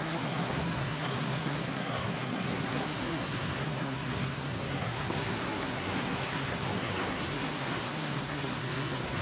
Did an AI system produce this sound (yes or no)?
yes